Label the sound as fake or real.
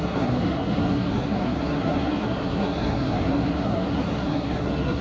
fake